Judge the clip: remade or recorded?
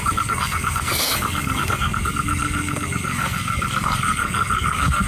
remade